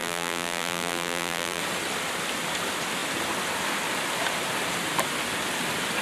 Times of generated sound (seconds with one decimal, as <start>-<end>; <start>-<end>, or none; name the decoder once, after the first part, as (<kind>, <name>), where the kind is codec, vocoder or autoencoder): 0.0-1.6 (vocoder, BigVGAN v2)